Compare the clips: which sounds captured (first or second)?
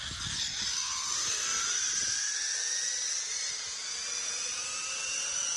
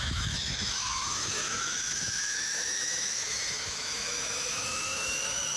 first